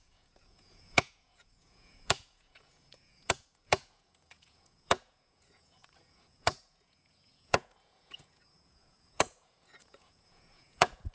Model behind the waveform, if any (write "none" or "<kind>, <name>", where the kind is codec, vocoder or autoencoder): vocoder, Vocos